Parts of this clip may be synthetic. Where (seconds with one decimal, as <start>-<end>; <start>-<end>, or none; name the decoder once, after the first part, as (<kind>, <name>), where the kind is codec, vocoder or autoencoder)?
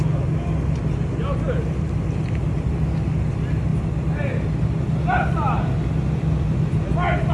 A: none